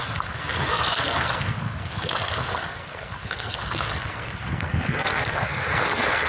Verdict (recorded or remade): remade